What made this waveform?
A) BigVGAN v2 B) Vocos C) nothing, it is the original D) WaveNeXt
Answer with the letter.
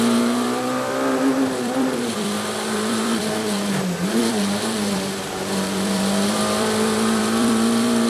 A